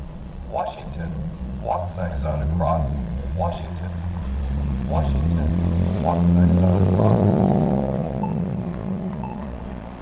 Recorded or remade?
remade